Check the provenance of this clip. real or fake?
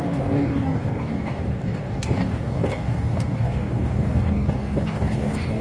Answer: fake